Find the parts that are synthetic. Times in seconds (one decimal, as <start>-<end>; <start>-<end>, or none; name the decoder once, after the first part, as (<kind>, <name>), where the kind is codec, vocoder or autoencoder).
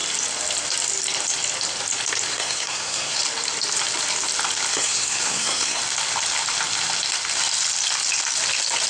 2.3-3.2 (codec, SNAC); 4.7-5.8